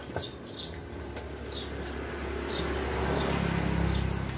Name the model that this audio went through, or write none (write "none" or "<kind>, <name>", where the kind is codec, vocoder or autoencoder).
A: none